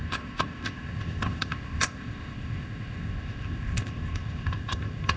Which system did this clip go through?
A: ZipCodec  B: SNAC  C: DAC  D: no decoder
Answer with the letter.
A